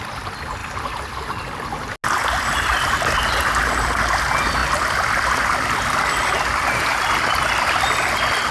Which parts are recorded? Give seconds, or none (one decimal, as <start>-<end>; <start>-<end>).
0.0-8.5